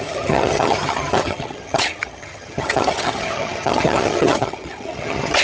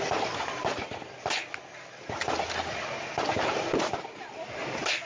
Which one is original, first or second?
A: second